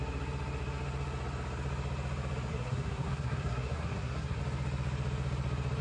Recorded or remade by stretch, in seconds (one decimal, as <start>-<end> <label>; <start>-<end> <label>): 0.0-2.5 recorded; 2.5-4.4 remade; 4.4-5.8 recorded